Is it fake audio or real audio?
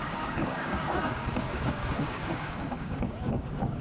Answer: fake